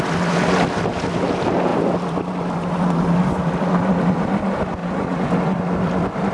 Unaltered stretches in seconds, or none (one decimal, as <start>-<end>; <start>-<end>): 0.0-4.8; 5.4-6.3